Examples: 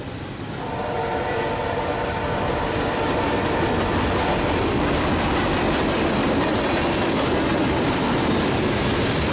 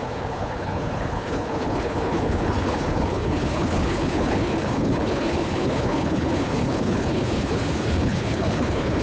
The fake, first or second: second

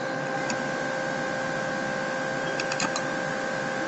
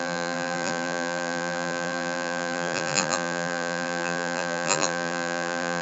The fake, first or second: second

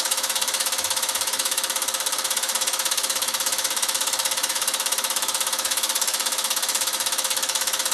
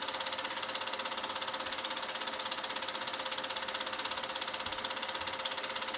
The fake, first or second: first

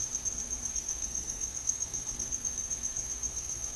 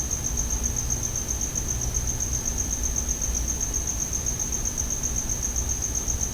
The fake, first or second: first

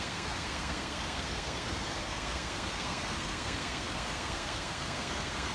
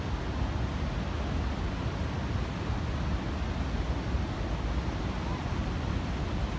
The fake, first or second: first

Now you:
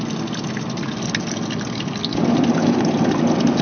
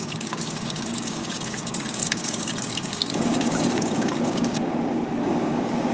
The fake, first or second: second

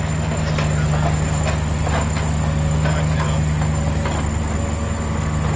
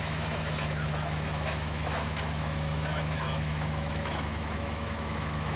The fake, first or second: second